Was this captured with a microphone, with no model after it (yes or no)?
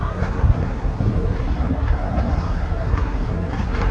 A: no